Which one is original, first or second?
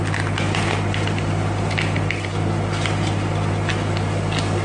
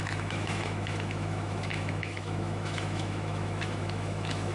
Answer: first